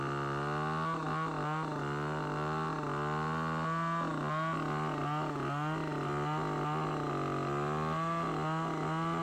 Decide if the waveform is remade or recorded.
recorded